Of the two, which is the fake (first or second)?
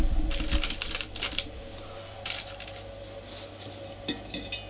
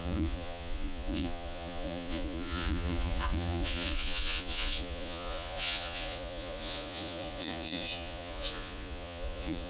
second